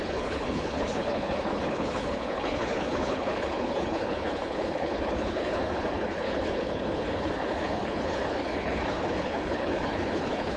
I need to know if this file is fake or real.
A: fake